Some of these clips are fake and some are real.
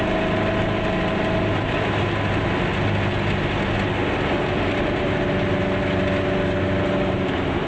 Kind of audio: real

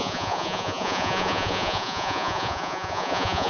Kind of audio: fake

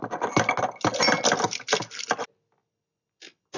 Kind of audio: real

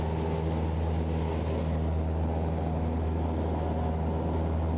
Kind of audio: real